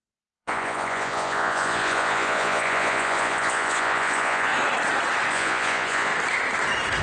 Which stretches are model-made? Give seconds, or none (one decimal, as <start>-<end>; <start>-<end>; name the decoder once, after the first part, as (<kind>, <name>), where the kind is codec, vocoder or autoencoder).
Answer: 0.0-4.5 (vocoder, Vocos); 5.3-6.1